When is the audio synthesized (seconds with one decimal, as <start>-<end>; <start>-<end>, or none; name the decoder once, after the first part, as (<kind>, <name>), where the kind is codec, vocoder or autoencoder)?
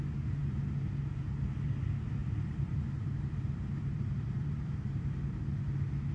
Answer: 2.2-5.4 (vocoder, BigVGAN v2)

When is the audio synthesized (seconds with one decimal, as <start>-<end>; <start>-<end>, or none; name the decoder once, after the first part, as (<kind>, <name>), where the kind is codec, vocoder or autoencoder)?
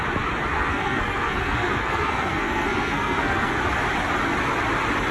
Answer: 0.5-3.6 (codec, SNAC)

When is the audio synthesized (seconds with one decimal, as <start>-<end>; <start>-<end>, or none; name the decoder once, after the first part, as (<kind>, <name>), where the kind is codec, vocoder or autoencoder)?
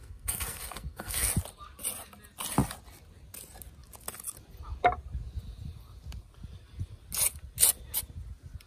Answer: 0.0-1.3 (codec, SNAC)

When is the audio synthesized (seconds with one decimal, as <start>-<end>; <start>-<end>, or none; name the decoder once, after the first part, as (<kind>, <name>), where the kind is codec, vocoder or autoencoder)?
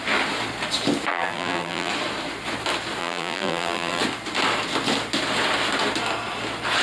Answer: 1.1-1.9 (vocoder, BigVGAN v2); 3.0-4.0